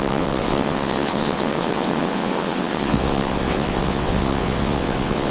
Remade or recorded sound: remade